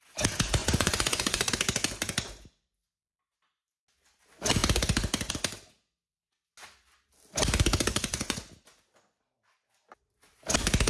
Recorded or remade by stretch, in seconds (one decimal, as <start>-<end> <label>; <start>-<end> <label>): 0.0-0.6 recorded; 0.6-1.5 remade; 1.5-7.9 recorded; 7.9-8.4 remade; 8.4-10.9 recorded